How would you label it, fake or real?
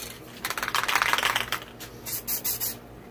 real